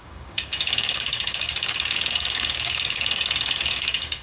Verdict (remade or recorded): remade